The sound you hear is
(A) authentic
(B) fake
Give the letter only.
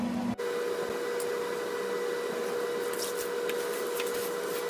A